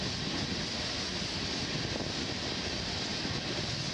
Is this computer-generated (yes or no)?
no